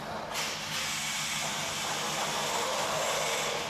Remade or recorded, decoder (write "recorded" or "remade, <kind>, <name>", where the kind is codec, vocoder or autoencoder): recorded